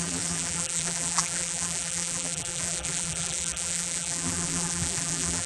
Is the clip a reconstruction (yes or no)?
yes